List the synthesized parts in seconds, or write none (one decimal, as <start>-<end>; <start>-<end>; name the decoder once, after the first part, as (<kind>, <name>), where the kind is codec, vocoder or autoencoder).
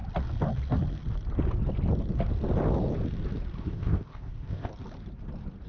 3.6-4.7 (codec, ZipCodec)